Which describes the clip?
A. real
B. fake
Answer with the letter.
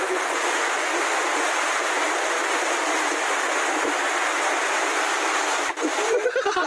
A